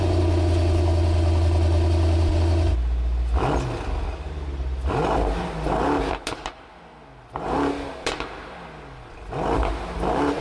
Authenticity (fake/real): real